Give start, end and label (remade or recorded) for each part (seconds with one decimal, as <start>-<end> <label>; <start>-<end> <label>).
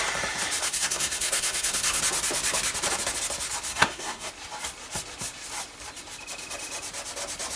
0.0-0.6 recorded; 0.6-2.0 remade; 2.0-3.7 recorded; 3.7-4.3 remade; 4.3-7.6 recorded